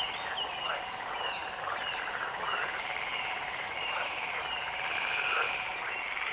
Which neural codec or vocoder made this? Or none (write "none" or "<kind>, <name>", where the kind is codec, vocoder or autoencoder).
vocoder, BigVGAN v2